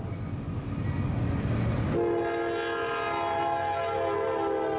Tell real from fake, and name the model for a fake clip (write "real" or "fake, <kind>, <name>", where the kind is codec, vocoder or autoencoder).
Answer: real